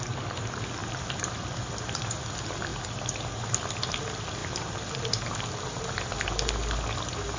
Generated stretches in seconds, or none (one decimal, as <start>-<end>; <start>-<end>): 0.8-2.2; 2.7-3.4; 4.4-5.9